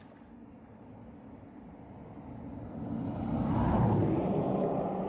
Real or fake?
real